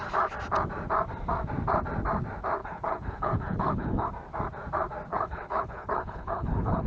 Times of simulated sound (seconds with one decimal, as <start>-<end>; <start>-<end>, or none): 2.6-4.1; 5.1-6.9